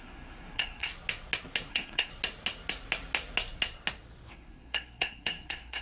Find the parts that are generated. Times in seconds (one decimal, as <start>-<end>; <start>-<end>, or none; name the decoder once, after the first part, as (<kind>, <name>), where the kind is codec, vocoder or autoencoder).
0.0-0.9 (codec, SNAC); 1.7-2.1; 4.3-5.8